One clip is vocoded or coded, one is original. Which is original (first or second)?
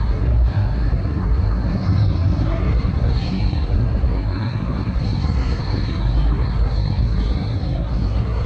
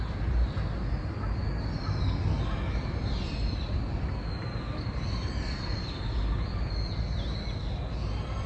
second